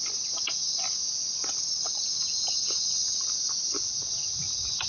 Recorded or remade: recorded